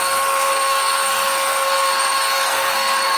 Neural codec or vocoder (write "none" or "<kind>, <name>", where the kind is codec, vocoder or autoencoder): codec, SNAC